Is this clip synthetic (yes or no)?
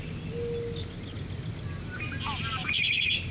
no